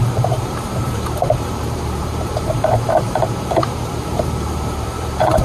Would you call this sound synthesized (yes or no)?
yes